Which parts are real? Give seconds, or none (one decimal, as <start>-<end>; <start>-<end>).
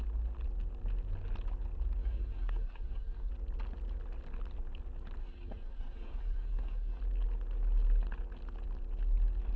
0.0-2.0; 3.3-5.2; 7.0-9.6